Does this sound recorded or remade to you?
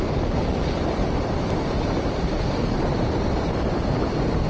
recorded